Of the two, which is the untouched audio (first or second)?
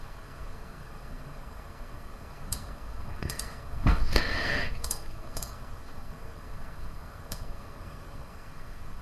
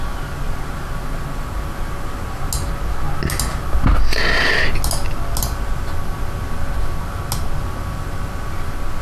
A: second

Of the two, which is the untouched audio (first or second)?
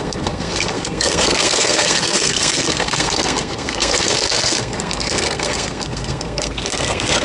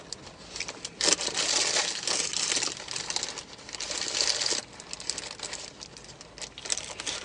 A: second